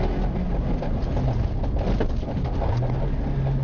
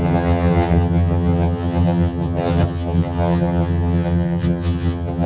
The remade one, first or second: second